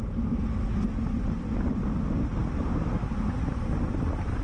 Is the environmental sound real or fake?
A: real